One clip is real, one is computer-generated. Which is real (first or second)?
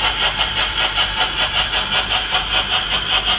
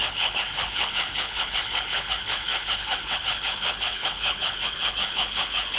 first